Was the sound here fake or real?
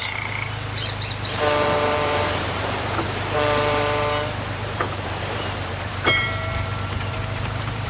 fake